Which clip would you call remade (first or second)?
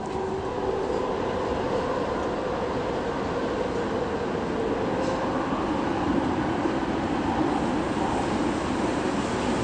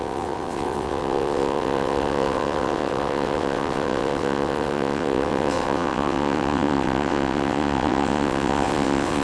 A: second